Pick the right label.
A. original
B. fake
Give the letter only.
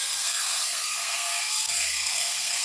B